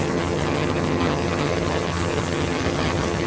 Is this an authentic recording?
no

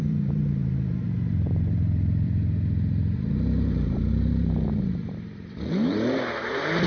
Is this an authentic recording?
no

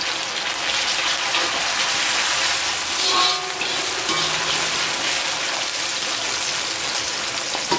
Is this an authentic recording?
yes